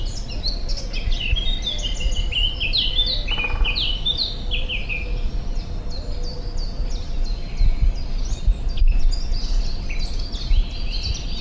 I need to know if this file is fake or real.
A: real